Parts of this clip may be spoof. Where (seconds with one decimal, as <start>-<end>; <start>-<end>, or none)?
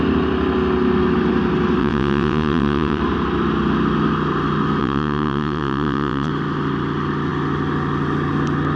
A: 1.8-3.0; 4.8-6.3